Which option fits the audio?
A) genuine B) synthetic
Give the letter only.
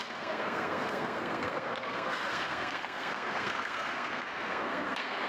B